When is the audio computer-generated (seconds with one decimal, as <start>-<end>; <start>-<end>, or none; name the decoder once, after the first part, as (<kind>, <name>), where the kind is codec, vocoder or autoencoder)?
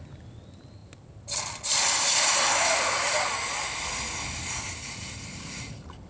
none